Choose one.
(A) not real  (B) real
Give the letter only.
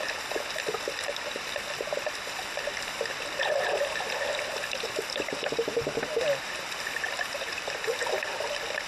A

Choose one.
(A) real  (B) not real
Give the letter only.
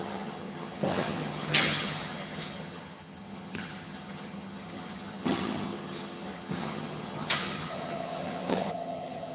B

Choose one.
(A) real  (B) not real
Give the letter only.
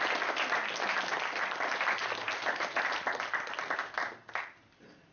A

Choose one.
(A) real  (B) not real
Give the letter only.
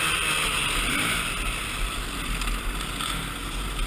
A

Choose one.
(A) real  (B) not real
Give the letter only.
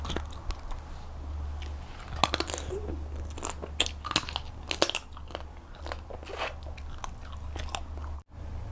A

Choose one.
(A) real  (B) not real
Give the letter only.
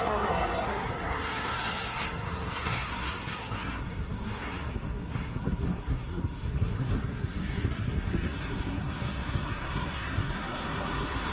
B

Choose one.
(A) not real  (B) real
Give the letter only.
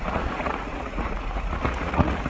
A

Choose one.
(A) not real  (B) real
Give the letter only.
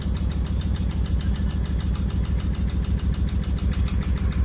B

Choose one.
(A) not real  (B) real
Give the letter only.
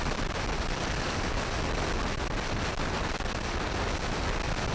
B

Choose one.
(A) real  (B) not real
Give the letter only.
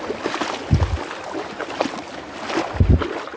A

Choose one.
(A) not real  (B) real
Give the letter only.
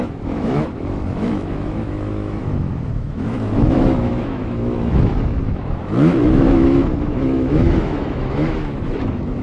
A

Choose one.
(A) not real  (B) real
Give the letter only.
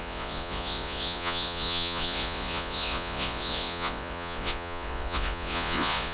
A